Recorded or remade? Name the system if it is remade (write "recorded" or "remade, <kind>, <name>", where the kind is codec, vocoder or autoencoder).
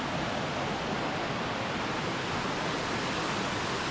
recorded